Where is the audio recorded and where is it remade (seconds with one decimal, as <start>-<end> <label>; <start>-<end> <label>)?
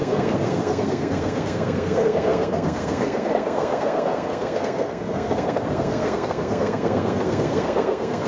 0.0-8.3 remade